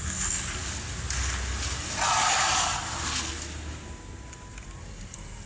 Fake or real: real